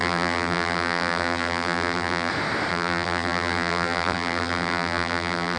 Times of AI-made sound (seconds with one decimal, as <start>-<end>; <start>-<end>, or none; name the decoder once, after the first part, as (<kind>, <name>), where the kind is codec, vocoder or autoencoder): 0.0-2.3 (vocoder, BigVGAN v2); 2.7-5.6